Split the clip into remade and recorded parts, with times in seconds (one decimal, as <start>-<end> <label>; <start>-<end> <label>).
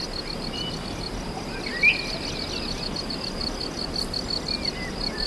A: 0.0-5.3 recorded